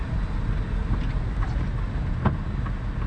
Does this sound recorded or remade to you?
recorded